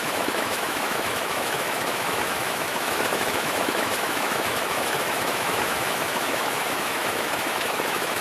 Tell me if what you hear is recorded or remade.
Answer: remade